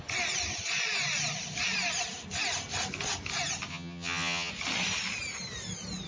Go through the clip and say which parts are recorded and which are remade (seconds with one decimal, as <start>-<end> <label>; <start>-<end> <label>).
0.0-3.7 recorded; 3.7-4.5 remade; 4.5-6.1 recorded

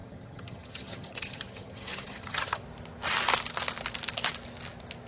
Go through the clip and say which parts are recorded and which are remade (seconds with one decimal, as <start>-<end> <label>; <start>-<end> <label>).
0.0-2.6 remade; 2.6-5.1 recorded

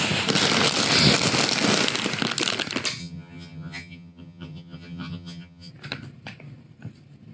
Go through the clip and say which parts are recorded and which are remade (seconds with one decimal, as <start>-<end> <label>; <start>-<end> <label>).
0.0-3.0 recorded; 3.0-5.7 remade; 5.7-7.3 recorded